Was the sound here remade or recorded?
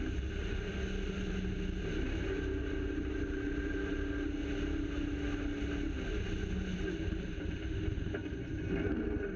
recorded